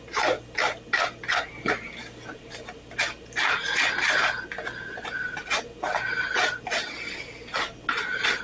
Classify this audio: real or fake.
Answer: real